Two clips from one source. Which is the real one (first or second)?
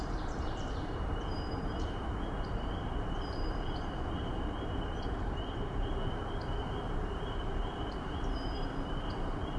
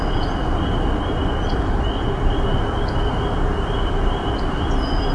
second